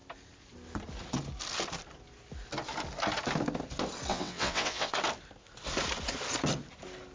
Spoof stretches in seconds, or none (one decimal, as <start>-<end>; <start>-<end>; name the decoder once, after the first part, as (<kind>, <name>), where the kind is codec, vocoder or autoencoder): 4.1-4.9 (vocoder, WaveNeXt)